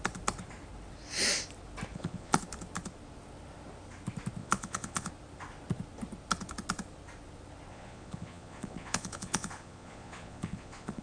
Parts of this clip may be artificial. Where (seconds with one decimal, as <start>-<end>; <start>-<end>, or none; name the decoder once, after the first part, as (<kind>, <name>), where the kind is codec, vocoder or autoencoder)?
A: 1.9-2.4 (vocoder, Vocos); 4.4-5.1; 7.7-11.0